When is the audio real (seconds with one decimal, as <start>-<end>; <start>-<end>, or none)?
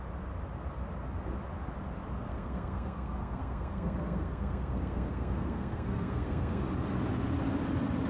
0.0-2.3; 6.6-8.1